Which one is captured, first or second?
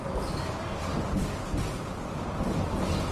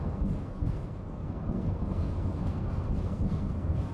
first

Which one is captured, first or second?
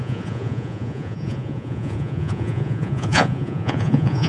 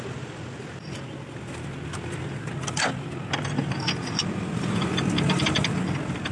second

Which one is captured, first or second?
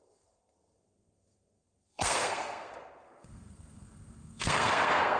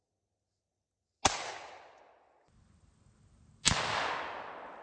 second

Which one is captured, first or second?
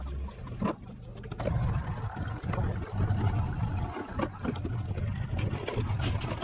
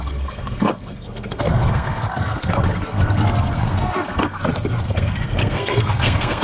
first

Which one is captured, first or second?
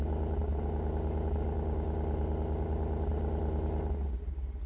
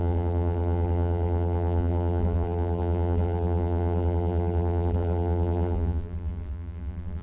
first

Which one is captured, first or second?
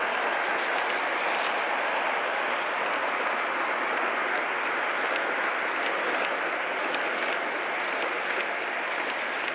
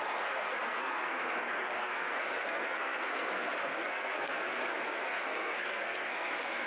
first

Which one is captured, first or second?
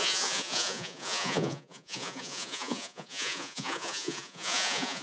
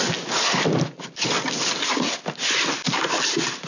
second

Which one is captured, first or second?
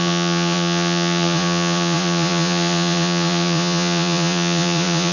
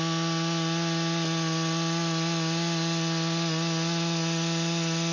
second